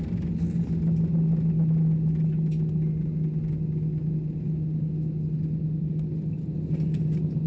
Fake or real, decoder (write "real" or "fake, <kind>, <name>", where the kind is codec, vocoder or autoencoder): real